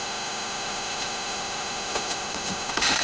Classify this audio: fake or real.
fake